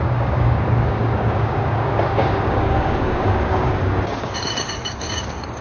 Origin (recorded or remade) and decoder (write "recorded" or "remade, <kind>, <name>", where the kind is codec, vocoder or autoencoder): remade, codec, DAC